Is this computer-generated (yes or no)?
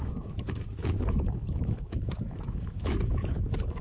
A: yes